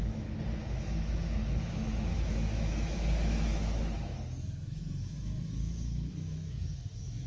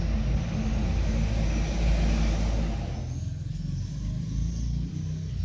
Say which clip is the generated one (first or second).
first